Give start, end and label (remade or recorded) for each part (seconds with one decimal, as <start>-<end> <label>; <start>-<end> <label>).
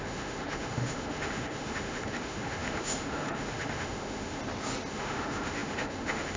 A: 0.0-4.4 remade; 4.4-4.9 recorded; 4.9-6.4 remade